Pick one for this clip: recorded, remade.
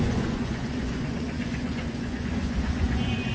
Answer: remade